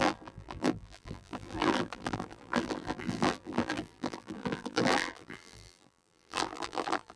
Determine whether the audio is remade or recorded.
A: remade